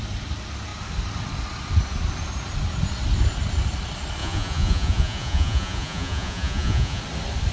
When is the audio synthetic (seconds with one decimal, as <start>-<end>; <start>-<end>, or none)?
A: 4.2-7.0